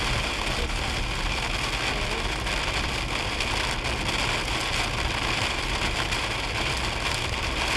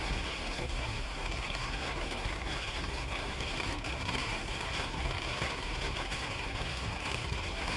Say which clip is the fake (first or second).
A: second